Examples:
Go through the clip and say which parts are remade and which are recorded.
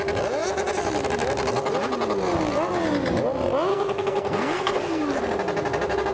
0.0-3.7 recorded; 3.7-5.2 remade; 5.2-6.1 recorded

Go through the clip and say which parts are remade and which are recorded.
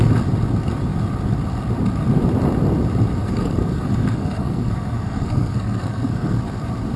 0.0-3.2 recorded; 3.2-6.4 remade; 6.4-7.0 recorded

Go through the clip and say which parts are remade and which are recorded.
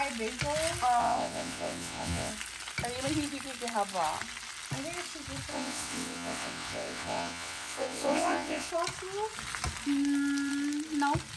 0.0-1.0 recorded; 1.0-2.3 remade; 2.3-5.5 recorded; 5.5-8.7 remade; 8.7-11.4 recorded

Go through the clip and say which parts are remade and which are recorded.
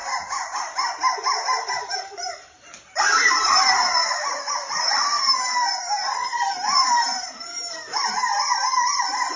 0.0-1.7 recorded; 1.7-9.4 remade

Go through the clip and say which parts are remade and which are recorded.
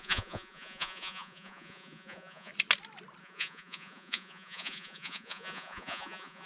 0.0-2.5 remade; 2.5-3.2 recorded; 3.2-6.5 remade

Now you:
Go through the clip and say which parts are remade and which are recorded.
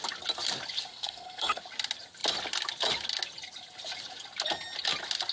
0.0-0.9 recorded; 0.9-1.6 remade; 1.6-5.3 recorded